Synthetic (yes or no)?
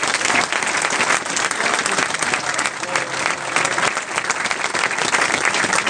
no